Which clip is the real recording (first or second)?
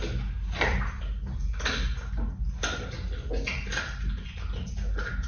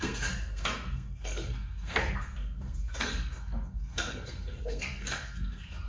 first